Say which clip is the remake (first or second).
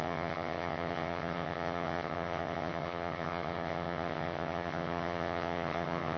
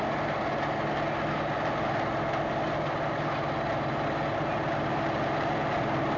first